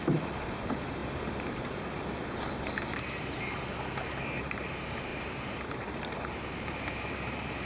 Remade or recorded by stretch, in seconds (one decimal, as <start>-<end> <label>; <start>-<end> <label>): 0.0-1.0 remade; 1.0-3.2 recorded; 3.2-7.7 remade